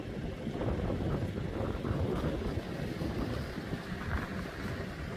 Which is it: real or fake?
real